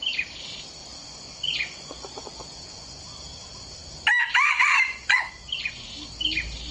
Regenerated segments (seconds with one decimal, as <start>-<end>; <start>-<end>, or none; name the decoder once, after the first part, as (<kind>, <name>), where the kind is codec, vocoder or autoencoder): 0.8-3.0 (vocoder, Vocos); 4.2-5.9